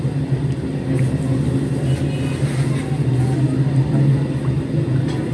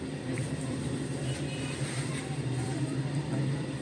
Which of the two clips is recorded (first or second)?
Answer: first